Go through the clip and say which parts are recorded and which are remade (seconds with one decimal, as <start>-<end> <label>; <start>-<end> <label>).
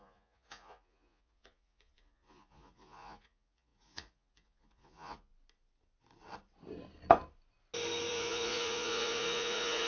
0.0-5.3 remade; 5.3-8.1 recorded; 8.1-9.9 remade